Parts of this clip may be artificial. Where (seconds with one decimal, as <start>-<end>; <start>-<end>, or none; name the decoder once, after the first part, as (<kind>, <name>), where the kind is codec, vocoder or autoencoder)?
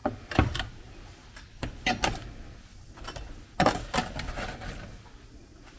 none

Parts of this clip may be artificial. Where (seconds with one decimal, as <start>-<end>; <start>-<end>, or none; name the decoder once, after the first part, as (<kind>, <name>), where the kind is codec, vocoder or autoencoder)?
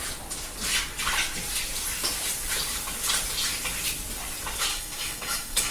4.7-5.7 (codec, DAC)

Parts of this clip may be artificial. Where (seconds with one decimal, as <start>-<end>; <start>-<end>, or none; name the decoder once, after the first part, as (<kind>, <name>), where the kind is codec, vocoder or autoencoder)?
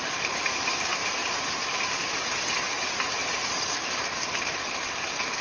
none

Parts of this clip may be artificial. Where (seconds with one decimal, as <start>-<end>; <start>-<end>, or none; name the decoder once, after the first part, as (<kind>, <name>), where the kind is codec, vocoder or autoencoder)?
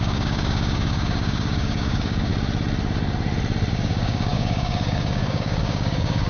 0.0-2.3 (codec, DAC); 3.7-6.3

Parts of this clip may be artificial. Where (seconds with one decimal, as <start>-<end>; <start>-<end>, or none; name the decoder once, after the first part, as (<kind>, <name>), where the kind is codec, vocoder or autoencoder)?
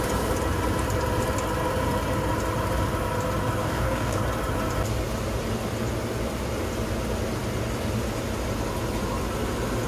3.6-4.2 (codec, DAC)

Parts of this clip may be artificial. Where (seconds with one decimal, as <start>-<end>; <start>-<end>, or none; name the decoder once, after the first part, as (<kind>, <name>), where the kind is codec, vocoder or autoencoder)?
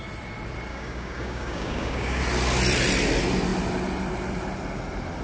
0.7-2.2 (codec, DAC)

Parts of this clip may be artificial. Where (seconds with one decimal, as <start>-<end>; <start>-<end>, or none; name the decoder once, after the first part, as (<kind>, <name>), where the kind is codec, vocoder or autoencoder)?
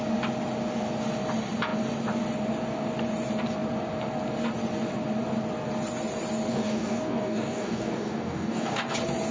6.5-8.8 (codec, DAC)